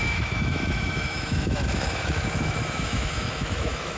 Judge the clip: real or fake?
fake